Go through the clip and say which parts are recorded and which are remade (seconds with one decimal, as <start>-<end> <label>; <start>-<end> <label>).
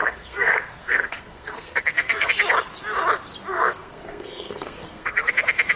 0.0-2.3 remade; 2.3-3.5 recorded; 3.5-5.3 remade; 5.3-5.8 recorded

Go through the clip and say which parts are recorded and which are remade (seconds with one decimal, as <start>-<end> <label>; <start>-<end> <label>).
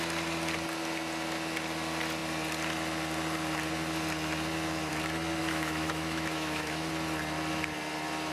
0.0-5.4 recorded; 5.4-6.9 remade; 6.9-8.3 recorded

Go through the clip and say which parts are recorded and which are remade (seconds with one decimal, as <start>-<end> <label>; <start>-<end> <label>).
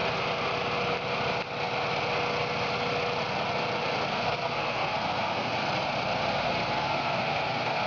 0.0-4.1 recorded; 4.1-5.5 remade; 5.5-6.3 recorded; 6.3-7.9 remade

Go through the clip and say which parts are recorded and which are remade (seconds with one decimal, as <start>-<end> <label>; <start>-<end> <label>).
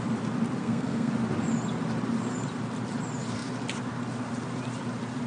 0.0-0.6 recorded; 0.6-1.1 remade; 1.1-5.3 recorded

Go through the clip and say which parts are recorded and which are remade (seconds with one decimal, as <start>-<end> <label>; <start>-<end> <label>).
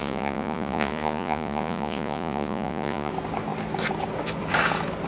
0.0-3.1 remade; 3.1-5.1 recorded